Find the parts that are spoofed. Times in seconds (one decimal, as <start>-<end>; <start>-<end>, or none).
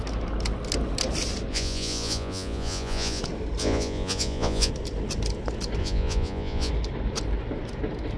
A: 1.5-3.2; 3.6-4.7; 5.8-6.7